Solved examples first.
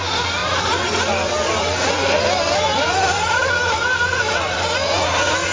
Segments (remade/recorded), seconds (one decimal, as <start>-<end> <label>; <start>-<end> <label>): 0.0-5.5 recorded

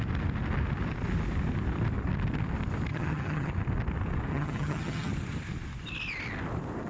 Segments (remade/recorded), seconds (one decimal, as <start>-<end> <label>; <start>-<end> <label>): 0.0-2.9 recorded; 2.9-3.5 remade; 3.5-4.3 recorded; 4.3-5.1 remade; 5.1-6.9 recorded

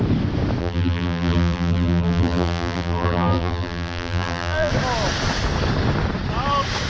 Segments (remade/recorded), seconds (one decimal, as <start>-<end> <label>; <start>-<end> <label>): 0.0-0.6 recorded; 0.6-4.7 remade; 4.7-6.9 recorded

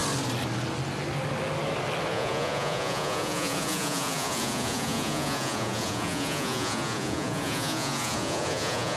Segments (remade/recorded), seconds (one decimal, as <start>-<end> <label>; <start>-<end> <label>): 0.0-2.1 recorded; 2.1-9.0 remade

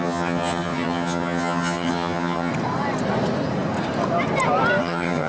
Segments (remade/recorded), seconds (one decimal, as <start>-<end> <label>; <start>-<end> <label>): 0.0-2.5 remade; 2.5-4.8 recorded; 4.8-5.3 remade

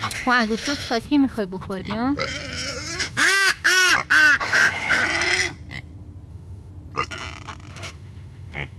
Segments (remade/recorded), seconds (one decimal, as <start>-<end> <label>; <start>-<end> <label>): 0.0-1.8 remade; 1.8-3.0 recorded; 3.0-3.9 remade; 3.9-4.4 recorded; 4.4-5.0 remade; 5.0-6.3 recorded; 6.3-6.7 remade; 6.7-7.7 recorded; 7.7-8.8 remade

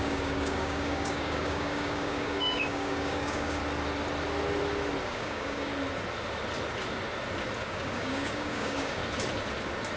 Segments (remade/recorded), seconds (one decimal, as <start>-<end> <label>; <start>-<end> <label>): 0.0-3.6 remade; 3.6-5.0 recorded; 5.0-5.7 remade; 5.7-7.6 recorded; 7.6-9.0 remade; 9.0-10.0 recorded

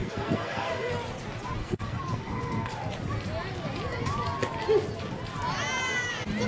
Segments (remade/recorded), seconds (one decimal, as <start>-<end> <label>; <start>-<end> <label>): 0.0-0.9 remade; 0.9-1.6 recorded; 1.6-2.7 remade; 2.7-6.5 recorded